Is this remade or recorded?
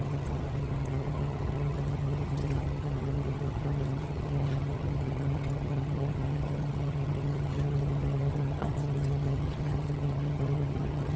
remade